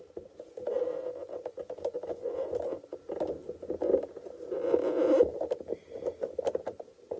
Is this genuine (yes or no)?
yes